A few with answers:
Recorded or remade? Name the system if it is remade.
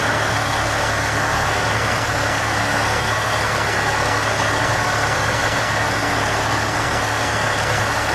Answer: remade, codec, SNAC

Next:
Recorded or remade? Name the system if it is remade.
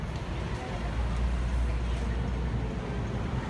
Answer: recorded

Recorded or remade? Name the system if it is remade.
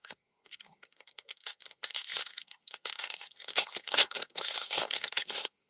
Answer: remade, codec, SNAC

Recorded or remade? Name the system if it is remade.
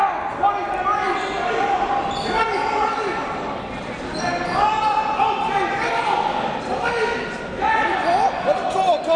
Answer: recorded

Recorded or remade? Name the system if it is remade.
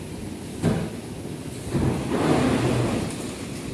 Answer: recorded